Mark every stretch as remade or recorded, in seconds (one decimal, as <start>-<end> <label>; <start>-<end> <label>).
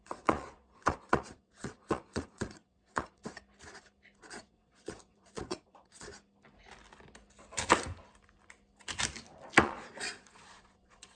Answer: 0.0-3.2 remade; 3.2-4.2 recorded; 4.2-6.1 remade; 6.1-9.6 recorded; 9.6-11.2 remade